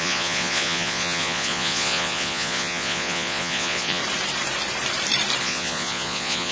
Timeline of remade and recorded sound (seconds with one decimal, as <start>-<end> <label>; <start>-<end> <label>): 0.0-4.0 remade; 4.0-5.4 recorded; 5.4-6.5 remade